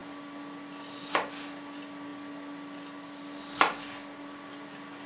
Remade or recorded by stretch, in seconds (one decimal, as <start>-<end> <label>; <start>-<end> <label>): 0.0-5.1 recorded